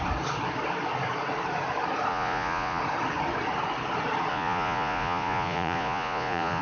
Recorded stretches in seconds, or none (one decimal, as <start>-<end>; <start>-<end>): 0.0-2.1; 2.8-4.3